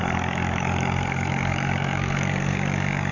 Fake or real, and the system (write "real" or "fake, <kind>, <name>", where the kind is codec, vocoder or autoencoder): fake, codec, DAC